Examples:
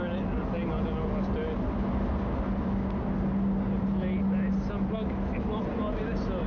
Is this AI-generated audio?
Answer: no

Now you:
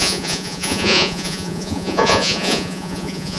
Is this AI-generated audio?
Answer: yes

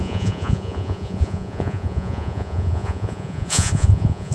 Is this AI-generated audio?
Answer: yes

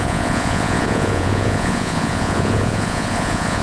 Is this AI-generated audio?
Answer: yes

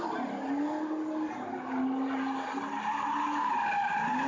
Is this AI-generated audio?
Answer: no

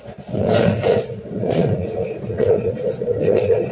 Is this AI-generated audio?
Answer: yes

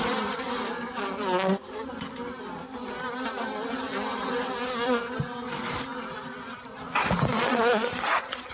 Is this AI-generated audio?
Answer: no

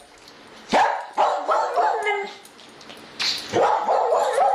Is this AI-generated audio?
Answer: no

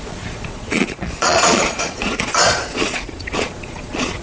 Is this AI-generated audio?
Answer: yes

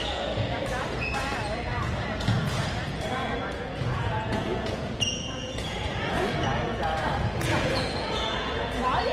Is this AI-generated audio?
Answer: yes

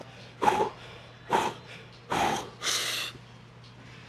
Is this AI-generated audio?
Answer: no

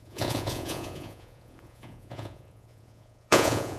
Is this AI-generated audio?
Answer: yes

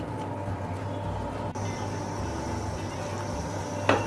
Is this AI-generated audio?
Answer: no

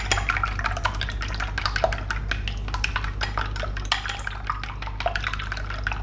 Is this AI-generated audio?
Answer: no